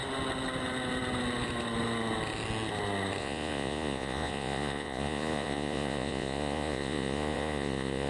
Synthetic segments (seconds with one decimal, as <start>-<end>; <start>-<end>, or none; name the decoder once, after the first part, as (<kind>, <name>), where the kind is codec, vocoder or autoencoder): 3.2-8.1 (vocoder, Vocos)